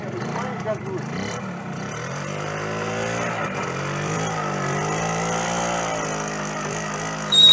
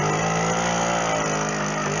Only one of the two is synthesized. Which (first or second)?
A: first